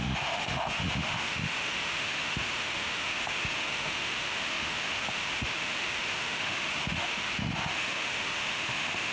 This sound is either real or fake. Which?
fake